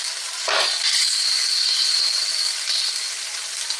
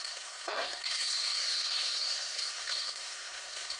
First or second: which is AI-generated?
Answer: second